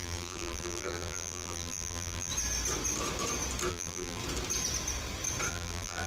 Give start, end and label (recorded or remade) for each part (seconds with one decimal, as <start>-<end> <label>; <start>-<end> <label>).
0.0-2.3 remade; 2.3-3.7 recorded; 3.7-4.2 remade; 4.2-5.5 recorded; 5.5-6.1 remade